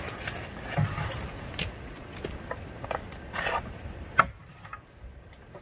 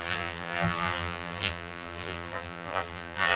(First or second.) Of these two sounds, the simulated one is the second